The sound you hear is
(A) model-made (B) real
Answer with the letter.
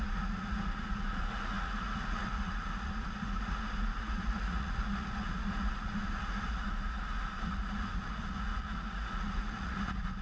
A